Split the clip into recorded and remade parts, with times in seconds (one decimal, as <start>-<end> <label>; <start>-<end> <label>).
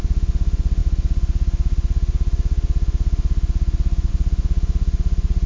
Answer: 0.0-5.5 recorded